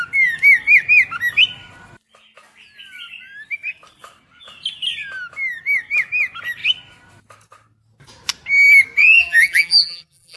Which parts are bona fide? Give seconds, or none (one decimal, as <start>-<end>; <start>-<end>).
0.0-9.0